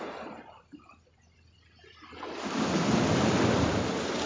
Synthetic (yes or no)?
no